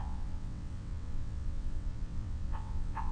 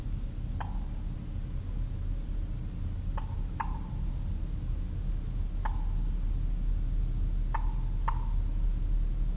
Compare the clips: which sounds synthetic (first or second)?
first